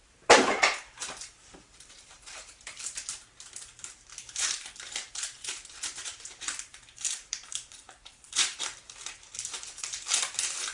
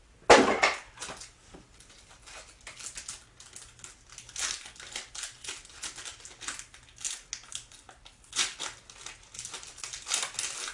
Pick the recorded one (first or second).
second